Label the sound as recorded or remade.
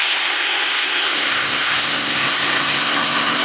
remade